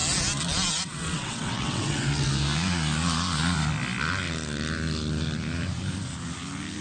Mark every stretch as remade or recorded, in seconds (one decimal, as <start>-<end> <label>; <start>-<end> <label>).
0.0-0.7 recorded; 0.7-2.3 remade; 2.3-6.8 recorded